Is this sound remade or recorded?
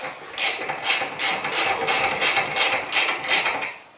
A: recorded